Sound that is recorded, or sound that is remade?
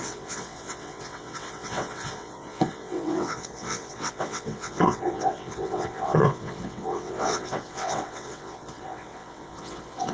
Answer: remade